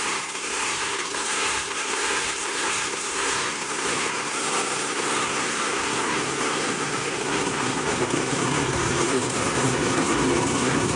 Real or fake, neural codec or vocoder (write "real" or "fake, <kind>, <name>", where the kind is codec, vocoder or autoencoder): fake, codec, SNAC